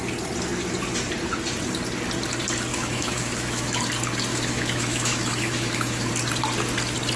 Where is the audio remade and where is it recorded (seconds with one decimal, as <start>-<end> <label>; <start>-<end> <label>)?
0.0-2.7 recorded; 2.7-3.8 remade; 3.8-4.3 recorded; 4.3-6.1 remade; 6.1-7.2 recorded